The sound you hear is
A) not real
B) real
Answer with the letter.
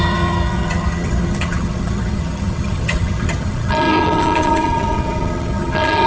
A